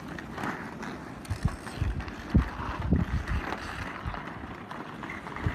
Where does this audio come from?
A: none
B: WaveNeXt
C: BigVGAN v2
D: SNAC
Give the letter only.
A